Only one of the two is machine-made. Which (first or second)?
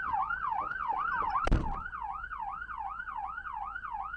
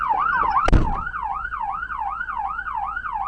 first